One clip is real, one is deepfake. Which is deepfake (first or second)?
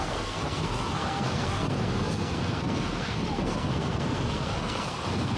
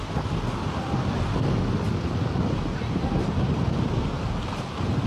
first